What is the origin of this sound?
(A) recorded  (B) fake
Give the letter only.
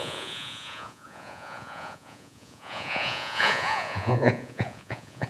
B